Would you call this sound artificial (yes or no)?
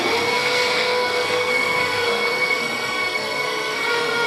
yes